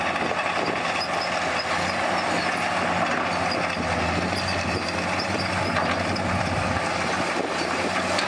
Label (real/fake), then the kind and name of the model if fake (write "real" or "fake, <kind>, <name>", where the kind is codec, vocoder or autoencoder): real